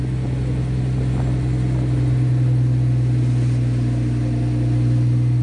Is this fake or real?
real